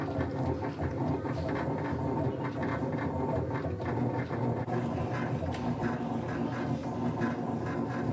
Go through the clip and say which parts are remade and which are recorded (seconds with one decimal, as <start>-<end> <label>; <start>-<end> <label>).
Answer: 0.0-8.1 recorded